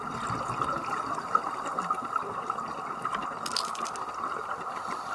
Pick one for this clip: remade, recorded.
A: recorded